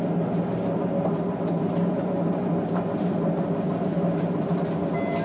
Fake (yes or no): no